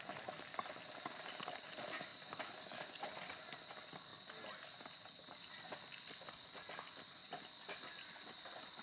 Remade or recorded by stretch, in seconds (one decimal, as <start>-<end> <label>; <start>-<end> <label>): 0.0-8.8 recorded